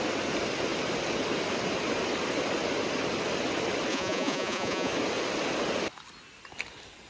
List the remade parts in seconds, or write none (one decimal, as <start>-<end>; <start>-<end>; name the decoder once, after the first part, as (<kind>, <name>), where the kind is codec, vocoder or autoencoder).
3.9-4.9 (vocoder, Vocos)